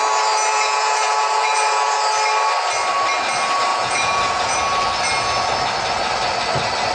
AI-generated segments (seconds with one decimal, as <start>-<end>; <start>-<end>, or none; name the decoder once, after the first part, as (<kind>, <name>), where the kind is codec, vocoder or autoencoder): 0.5-2.0 (vocoder, Vocos); 3.7-4.6